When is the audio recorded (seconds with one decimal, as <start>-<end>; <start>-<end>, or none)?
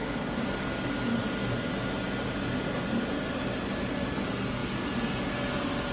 0.0-5.9